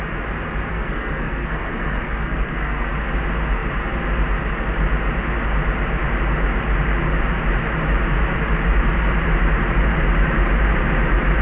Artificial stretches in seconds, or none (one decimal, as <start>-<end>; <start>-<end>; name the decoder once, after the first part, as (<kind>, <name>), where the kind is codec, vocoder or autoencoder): 0.7-2.9 (codec, SNAC)